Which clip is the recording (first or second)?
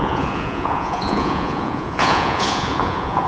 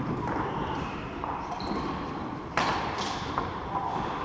second